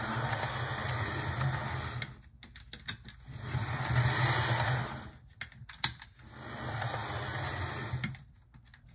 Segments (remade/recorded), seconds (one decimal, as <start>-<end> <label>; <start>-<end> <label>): 0.0-8.9 recorded